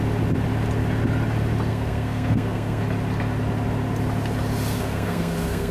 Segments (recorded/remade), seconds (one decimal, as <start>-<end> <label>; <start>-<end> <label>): 0.0-1.7 recorded; 1.7-2.8 remade; 2.8-4.8 recorded; 4.8-5.7 remade